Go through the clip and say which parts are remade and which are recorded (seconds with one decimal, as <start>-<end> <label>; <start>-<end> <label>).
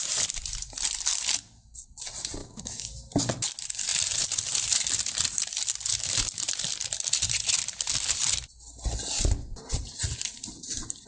0.0-2.4 recorded; 2.4-2.9 remade; 2.9-11.1 recorded